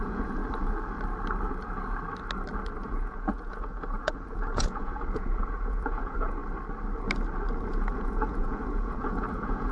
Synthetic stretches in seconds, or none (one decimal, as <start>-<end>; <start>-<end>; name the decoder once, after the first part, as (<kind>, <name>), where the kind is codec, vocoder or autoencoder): 0.0-0.4 (vocoder, Vocos); 2.8-6.4; 7.7-9.7

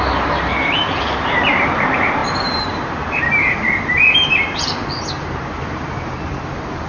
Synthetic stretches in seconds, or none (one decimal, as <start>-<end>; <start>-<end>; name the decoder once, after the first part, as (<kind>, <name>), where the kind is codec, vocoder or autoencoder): 0.0-6.9 (vocoder, BigVGAN v2)

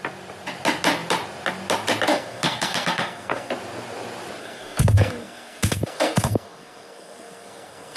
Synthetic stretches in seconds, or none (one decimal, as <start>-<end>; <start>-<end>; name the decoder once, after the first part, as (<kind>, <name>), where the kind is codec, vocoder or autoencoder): 2.1-3.5 (codec, SNAC); 4.4-8.0